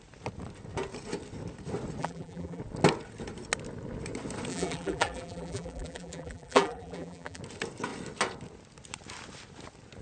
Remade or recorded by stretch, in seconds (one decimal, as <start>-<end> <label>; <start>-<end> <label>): 0.0-2.0 recorded; 2.0-2.6 remade; 2.6-4.5 recorded; 4.5-7.4 remade; 7.4-10.0 recorded